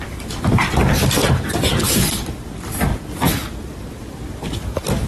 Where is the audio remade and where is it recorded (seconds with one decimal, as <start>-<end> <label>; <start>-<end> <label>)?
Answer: 0.0-0.9 remade; 0.9-1.9 recorded; 1.9-2.9 remade; 2.9-3.4 recorded; 3.4-5.1 remade